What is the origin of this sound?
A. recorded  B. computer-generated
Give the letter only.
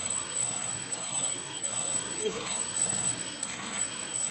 B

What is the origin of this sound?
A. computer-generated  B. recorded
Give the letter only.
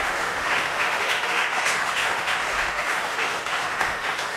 A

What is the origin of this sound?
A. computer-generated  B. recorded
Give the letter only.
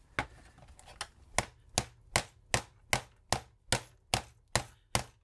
B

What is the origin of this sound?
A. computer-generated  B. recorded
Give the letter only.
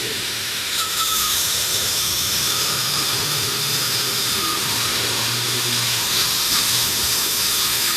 A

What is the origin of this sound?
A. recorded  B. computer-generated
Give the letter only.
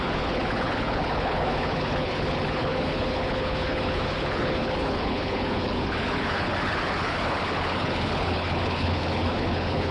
B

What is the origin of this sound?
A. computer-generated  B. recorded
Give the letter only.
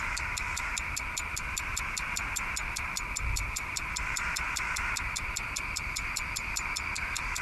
B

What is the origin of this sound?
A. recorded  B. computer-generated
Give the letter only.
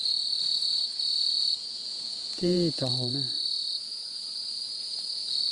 B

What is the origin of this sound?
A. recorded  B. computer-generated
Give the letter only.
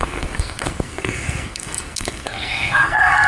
B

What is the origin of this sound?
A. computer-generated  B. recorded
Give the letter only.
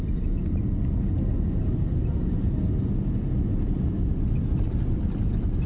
B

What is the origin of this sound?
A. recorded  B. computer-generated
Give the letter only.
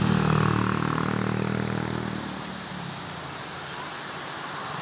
B